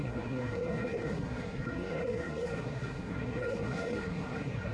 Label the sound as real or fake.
fake